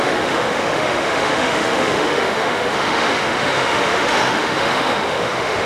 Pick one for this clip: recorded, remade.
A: remade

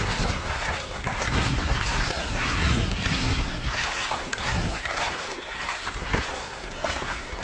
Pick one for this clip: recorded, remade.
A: remade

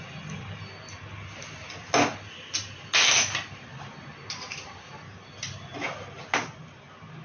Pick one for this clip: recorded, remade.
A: recorded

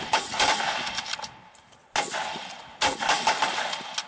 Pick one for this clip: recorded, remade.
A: recorded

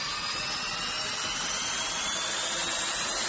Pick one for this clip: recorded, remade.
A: recorded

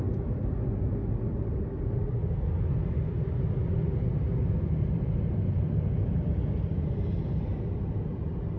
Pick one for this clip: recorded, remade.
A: recorded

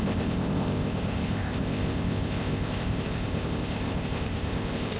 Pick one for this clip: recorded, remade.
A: remade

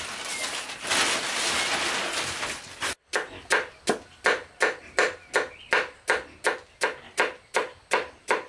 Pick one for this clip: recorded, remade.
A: recorded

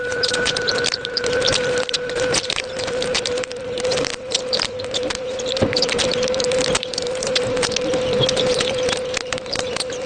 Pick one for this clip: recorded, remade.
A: remade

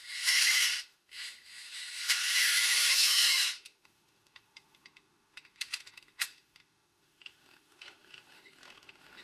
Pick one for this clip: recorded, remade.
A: remade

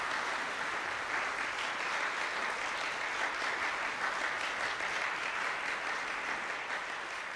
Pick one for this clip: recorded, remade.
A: recorded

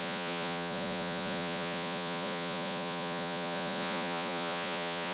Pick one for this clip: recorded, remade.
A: remade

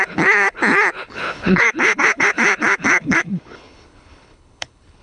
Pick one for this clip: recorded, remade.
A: remade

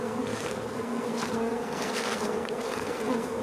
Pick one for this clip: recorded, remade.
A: remade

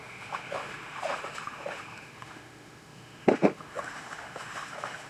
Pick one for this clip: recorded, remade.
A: remade